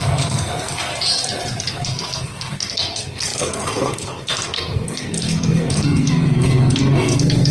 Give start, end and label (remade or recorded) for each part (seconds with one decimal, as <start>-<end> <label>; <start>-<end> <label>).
0.0-0.9 remade; 0.9-1.7 recorded; 1.7-7.5 remade